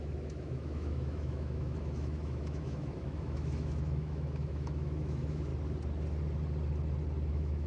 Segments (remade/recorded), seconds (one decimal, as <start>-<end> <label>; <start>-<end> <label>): 0.0-5.5 remade; 5.5-7.3 recorded; 7.3-7.7 remade